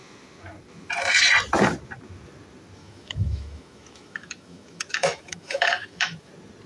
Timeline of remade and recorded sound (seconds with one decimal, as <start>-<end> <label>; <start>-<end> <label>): 0.0-2.8 recorded; 2.8-6.3 remade; 6.3-6.7 recorded